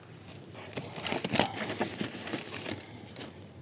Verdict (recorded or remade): recorded